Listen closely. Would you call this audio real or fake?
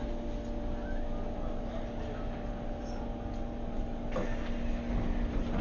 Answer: real